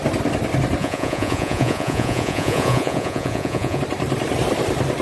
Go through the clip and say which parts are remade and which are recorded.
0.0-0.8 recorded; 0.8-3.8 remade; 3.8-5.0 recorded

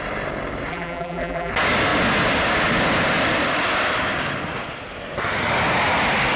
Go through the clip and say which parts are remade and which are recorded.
0.0-0.7 recorded; 0.7-1.5 remade; 1.5-6.4 recorded

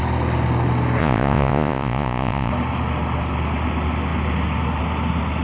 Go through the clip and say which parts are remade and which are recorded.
0.0-1.0 recorded; 1.0-2.5 remade; 2.5-5.4 recorded